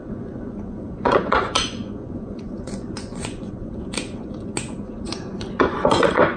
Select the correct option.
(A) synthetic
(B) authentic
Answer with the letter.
A